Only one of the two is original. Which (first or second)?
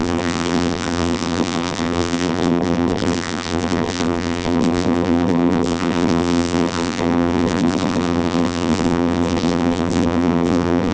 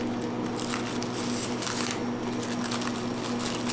second